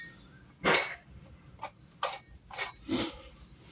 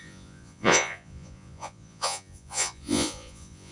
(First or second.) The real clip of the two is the first